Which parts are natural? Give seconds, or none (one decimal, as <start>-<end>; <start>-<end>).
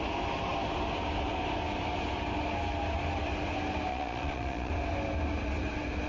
0.0-3.9; 4.7-6.1